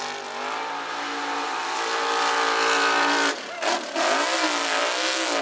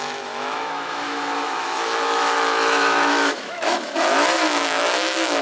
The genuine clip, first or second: first